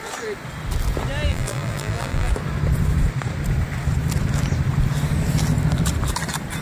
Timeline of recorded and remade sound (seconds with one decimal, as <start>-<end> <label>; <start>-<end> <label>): 0.0-1.3 recorded; 1.3-2.3 remade; 2.3-6.6 recorded